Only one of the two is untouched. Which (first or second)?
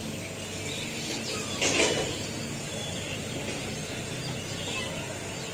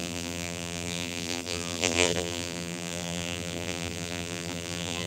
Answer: first